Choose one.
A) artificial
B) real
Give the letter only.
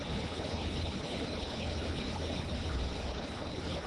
A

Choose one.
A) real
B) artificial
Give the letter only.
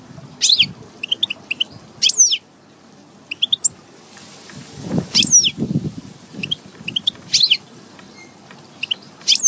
A